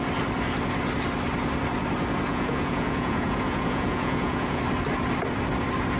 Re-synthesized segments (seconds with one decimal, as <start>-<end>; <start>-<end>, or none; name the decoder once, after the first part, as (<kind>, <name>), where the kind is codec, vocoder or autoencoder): 2.3-4.6 (vocoder, Vocos)